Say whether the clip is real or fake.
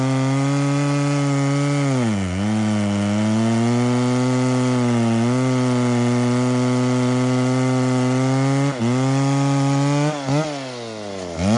real